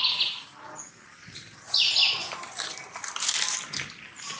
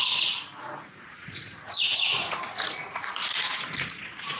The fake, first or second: second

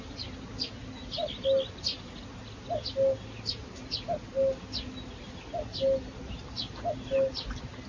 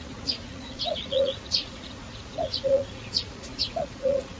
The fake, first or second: second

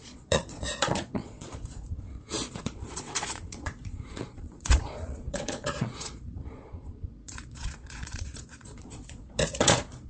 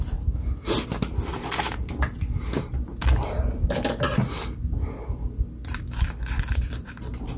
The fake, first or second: first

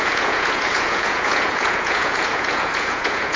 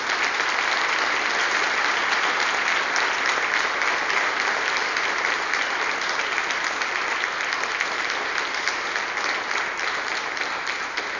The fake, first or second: first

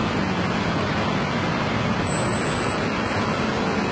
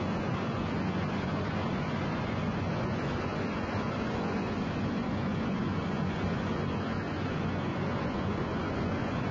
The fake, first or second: second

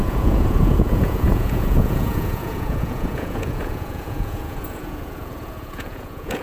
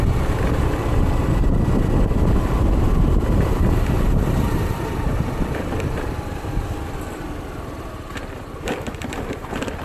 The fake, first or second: first